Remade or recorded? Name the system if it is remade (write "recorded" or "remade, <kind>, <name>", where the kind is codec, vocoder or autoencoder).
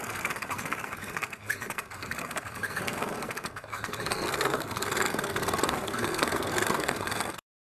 remade, codec, SNAC